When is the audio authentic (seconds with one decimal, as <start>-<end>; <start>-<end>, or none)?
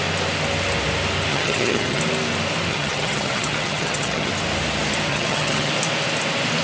0.0-1.3; 2.0-2.7; 4.3-5.1; 5.7-6.6